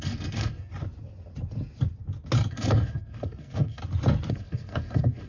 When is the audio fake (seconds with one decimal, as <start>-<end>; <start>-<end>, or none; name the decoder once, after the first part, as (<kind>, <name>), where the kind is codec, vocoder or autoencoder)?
0.0-0.7 (codec, SNAC); 2.5-3.8; 4.3-5.3